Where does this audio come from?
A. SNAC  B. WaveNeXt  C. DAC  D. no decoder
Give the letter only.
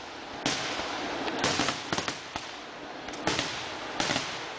D